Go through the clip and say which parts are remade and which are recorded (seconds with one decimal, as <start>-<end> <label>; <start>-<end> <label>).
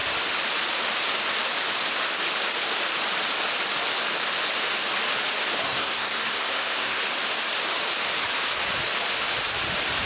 0.0-5.6 recorded; 5.6-7.0 remade; 7.0-10.1 recorded